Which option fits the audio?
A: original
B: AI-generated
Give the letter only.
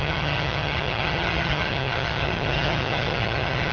B